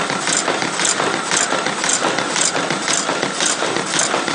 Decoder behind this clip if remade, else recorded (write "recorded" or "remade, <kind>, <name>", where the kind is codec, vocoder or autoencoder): recorded